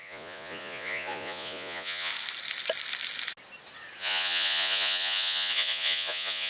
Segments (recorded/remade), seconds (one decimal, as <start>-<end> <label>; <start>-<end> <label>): 0.0-2.1 remade; 2.1-4.0 recorded; 4.0-6.5 remade